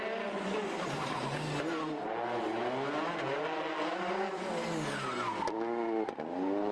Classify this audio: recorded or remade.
recorded